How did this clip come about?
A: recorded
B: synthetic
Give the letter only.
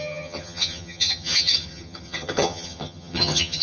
B